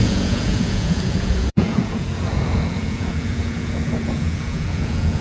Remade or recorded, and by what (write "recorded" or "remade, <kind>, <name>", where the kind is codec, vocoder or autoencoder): remade, vocoder, Vocos